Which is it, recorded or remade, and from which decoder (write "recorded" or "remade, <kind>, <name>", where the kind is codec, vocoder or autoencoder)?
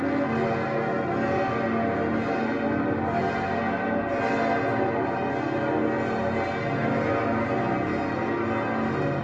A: recorded